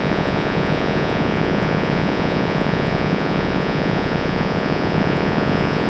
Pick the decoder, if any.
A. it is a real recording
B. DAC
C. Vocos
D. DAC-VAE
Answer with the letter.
C